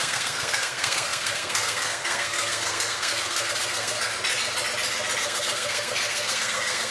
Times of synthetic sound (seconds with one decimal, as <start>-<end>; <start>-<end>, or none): 0.0-4.1; 5.2-6.9